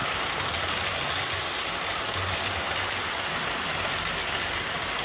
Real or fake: real